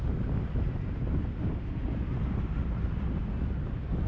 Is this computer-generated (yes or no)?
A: no